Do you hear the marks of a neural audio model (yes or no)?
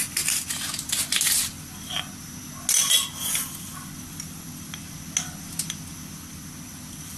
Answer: no